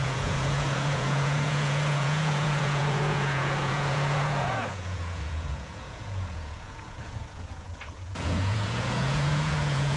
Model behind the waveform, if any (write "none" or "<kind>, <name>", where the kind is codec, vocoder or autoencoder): vocoder, Vocos